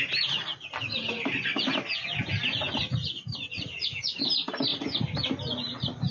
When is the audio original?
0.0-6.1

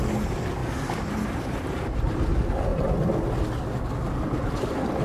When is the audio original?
0.0-5.0

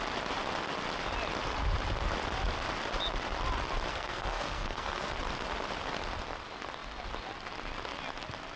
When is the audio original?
0.0-3.9; 5.1-8.6

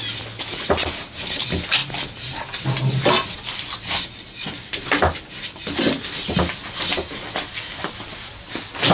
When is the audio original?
0.0-8.9

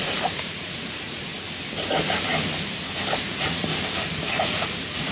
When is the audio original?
1.3-3.2; 3.7-4.4